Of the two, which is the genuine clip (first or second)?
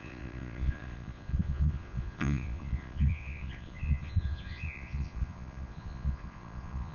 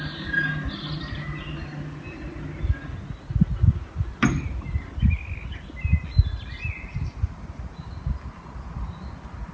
second